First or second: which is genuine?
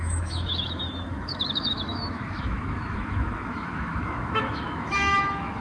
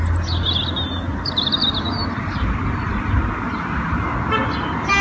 second